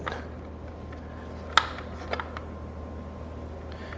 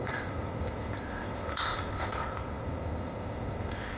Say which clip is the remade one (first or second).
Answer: second